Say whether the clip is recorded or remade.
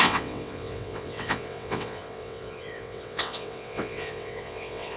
remade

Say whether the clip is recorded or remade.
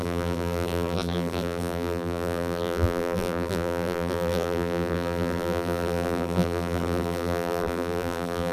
remade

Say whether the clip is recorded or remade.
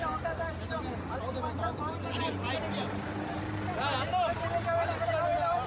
recorded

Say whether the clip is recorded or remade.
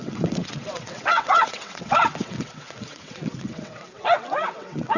remade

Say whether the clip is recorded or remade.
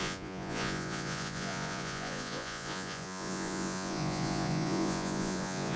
remade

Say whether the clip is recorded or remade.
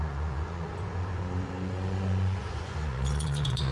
remade